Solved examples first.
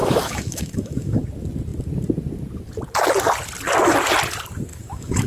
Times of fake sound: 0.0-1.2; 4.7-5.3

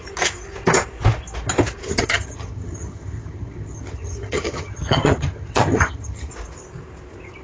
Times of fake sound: 1.9-6.3

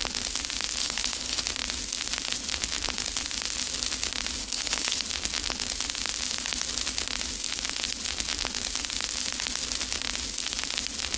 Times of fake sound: 0.8-1.4; 4.4-5.0

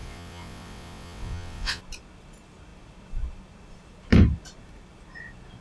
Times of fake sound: 0.0-1.8

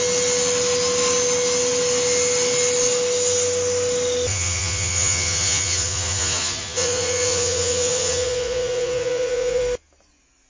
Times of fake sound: 4.3-9.6

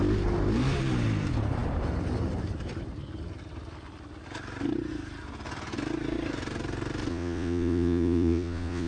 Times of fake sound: 7.1-8.9

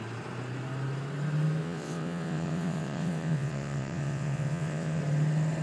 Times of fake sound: 1.6-5.0

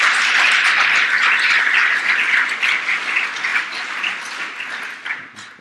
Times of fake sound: none